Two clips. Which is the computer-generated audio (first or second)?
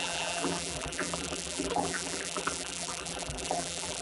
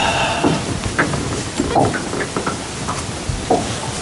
first